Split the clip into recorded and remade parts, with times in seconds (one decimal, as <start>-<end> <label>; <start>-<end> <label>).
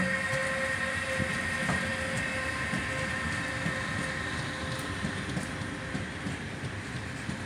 0.0-7.5 recorded